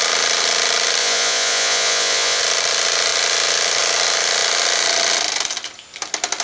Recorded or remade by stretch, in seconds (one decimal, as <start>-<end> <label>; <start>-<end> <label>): 0.0-1.0 recorded; 1.0-2.4 remade; 2.4-6.4 recorded

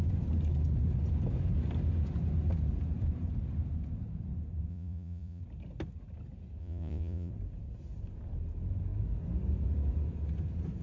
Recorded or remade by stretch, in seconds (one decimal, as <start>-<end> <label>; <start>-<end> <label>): 0.0-4.7 recorded; 4.7-5.4 remade; 5.4-6.6 recorded; 6.6-7.3 remade; 7.3-10.8 recorded

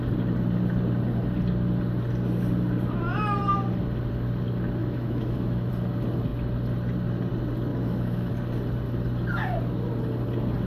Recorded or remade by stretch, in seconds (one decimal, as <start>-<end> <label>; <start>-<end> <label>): 0.0-4.8 recorded; 4.8-5.7 remade; 5.7-7.7 recorded; 7.7-8.3 remade; 8.3-10.7 recorded

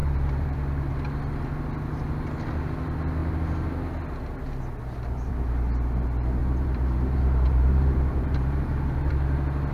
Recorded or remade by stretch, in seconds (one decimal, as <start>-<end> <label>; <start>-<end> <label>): 0.0-0.9 remade; 0.9-6.4 recorded; 6.4-9.1 remade; 9.1-9.7 recorded

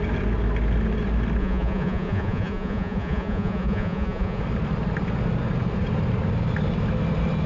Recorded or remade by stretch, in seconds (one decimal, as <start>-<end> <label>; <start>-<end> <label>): 0.0-1.4 recorded; 1.4-4.4 remade; 4.4-7.5 recorded

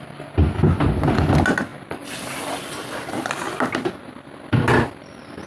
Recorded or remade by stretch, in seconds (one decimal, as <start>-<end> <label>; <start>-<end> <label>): 0.0-5.5 recorded

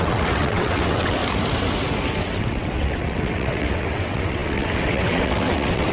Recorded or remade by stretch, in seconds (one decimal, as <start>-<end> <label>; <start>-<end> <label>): 0.0-1.2 remade; 1.2-2.2 recorded; 2.2-5.9 remade